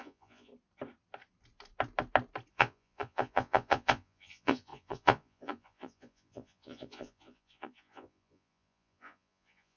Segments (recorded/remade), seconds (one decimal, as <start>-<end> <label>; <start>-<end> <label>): 0.0-0.5 remade; 0.5-2.5 recorded; 2.5-9.8 remade